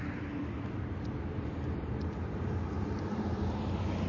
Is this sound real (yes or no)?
no